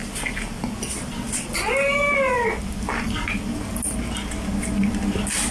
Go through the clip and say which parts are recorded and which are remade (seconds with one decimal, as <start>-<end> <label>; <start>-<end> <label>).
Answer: 0.0-5.5 recorded